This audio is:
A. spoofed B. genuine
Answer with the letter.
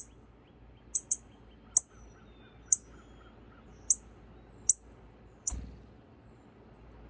B